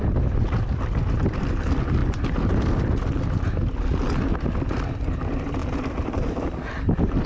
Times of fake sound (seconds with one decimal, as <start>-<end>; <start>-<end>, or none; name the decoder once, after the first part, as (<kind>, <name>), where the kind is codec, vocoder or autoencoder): none